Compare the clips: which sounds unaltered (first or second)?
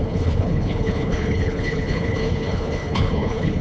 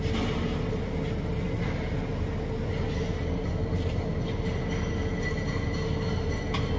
second